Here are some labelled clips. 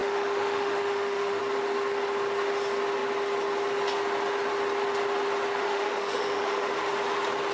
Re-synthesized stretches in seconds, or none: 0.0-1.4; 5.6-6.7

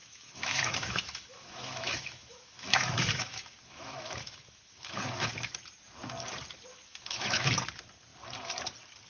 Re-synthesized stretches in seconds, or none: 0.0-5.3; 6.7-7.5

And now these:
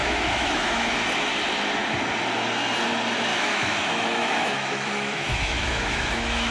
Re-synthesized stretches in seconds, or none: 0.0-0.9; 3.3-6.5

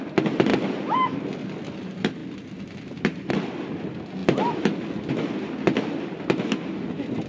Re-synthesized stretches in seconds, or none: none